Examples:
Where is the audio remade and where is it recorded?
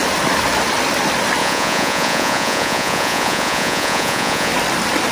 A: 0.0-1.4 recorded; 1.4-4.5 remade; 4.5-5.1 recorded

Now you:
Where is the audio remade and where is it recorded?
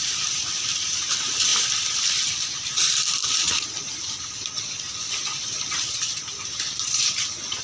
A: 0.0-7.6 recorded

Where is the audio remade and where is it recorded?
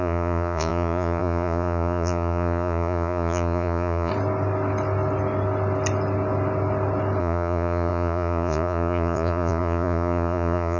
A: 0.0-4.1 remade; 4.1-7.2 recorded; 7.2-10.8 remade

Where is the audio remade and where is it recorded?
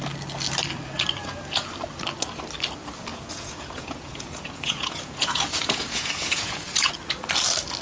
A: 0.0-1.2 recorded; 1.2-1.7 remade; 1.7-3.1 recorded; 3.1-6.9 remade; 6.9-7.8 recorded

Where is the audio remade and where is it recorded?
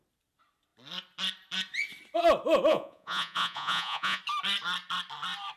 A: 0.0-2.7 recorded; 2.7-4.2 remade; 4.2-5.6 recorded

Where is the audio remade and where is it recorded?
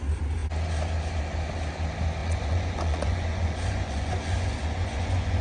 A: 0.0-2.2 recorded; 2.2-5.4 remade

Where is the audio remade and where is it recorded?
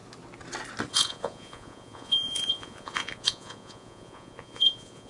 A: 0.0-0.9 recorded; 0.9-5.1 remade